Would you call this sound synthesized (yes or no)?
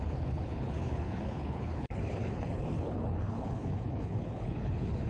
yes